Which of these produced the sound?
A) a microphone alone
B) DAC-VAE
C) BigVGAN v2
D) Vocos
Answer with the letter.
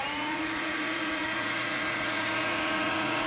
D